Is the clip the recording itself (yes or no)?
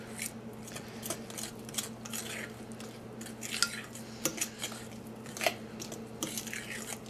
yes